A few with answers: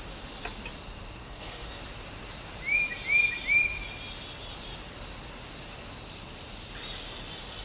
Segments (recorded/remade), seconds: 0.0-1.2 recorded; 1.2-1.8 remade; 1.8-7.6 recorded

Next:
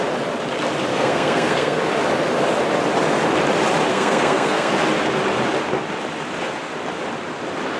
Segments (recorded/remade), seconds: 0.0-0.9 recorded; 0.9-1.8 remade; 1.8-3.9 recorded; 3.9-4.7 remade; 4.7-7.8 recorded

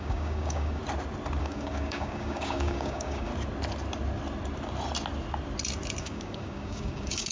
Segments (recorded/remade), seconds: 0.0-0.8 remade; 0.8-1.4 recorded; 1.4-3.3 remade; 3.3-6.0 recorded; 6.0-7.3 remade

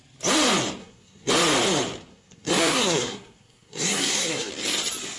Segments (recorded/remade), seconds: 0.0-0.8 recorded; 0.8-1.3 remade; 1.3-2.1 recorded; 2.1-4.5 remade; 4.5-5.2 recorded

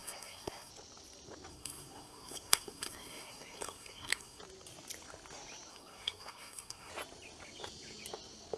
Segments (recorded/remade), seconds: 0.0-0.7 remade; 0.7-1.5 recorded; 1.5-4.4 remade; 4.4-5.7 recorded; 5.7-6.9 remade; 6.9-8.6 recorded

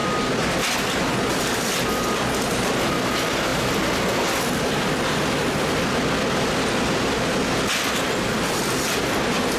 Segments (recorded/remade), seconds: 0.0-9.6 recorded

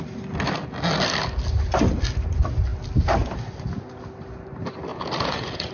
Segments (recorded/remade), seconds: 0.0-4.9 recorded; 4.9-5.7 remade

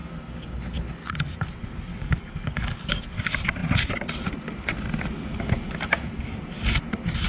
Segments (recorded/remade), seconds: 0.0-1.9 recorded; 1.9-3.0 remade; 3.0-7.3 recorded